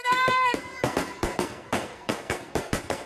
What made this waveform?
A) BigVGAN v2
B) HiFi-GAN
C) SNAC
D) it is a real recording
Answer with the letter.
C